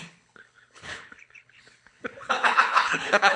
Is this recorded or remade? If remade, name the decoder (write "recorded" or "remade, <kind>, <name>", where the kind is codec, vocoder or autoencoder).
remade, codec, HILCodec